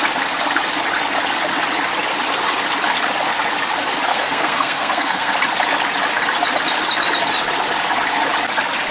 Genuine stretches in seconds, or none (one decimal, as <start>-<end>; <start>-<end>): 0.0-4.1; 5.3-8.9